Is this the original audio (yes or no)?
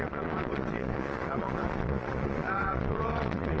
no